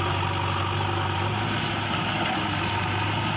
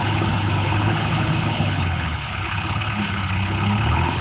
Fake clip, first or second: second